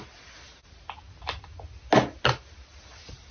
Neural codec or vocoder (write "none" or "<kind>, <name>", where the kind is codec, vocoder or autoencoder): none